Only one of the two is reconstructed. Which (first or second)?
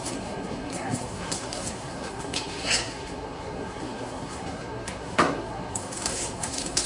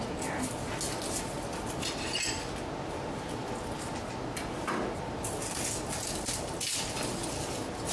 first